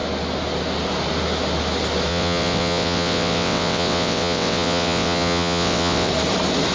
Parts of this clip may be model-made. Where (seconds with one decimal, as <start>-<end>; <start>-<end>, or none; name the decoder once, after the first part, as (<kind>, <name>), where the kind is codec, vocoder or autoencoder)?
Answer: 2.1-6.1 (vocoder, WaveNeXt)